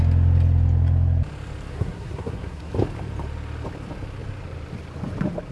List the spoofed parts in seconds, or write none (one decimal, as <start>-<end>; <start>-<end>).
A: 1.7-2.7